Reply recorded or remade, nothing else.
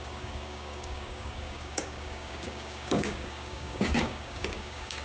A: remade